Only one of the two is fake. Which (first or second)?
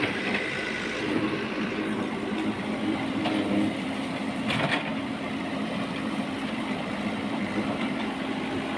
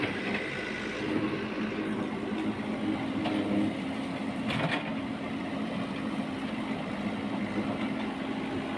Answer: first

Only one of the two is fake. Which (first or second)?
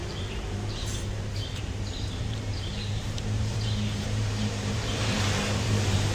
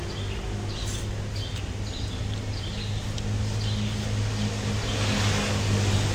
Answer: first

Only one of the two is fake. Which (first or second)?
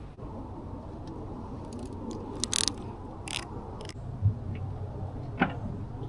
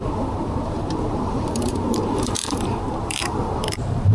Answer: second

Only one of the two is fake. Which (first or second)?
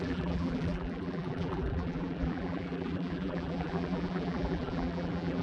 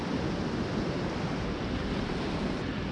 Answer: first